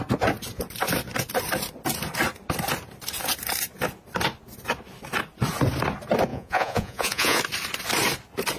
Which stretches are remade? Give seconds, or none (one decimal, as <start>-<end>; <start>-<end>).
6.3-7.4